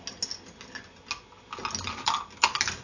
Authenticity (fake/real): real